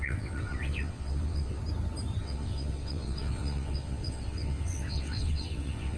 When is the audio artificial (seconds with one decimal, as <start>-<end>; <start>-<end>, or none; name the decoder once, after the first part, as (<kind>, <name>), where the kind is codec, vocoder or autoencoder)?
0.0-1.6 (vocoder, WaveNeXt); 2.2-6.0